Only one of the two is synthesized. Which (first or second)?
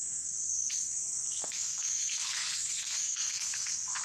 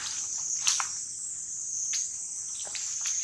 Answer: first